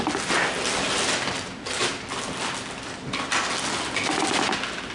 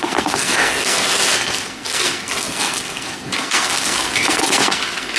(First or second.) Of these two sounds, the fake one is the second